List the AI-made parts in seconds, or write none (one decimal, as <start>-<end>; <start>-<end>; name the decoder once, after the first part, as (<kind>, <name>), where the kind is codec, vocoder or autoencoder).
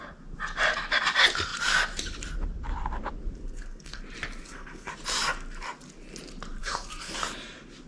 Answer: 3.4-4.0 (codec, SNAC); 4.4-4.9; 6.6-7.2